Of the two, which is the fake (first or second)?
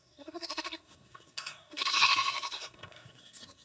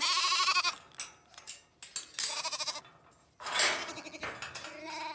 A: first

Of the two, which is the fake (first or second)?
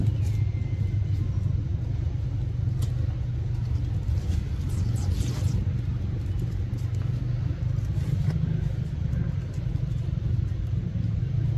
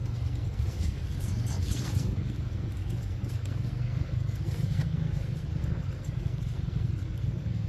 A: second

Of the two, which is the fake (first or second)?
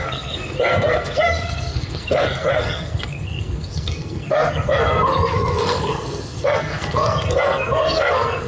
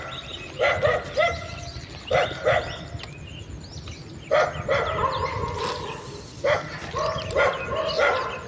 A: first